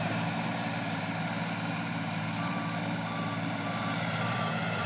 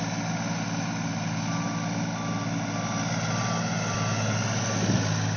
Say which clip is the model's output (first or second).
first